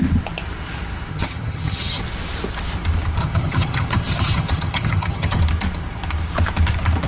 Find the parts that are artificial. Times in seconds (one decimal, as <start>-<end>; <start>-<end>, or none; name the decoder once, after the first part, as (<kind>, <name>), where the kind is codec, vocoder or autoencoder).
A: 1.1-2.0 (vocoder, HiFi-GAN); 3.2-5.4